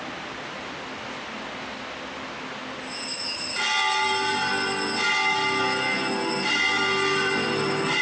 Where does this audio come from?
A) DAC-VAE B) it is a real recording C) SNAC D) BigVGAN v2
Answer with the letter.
B